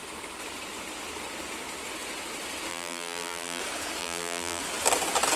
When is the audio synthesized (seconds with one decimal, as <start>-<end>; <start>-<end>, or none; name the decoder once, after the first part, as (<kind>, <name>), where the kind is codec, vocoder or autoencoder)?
2.7-3.6 (vocoder, BigVGAN v2); 4.0-4.6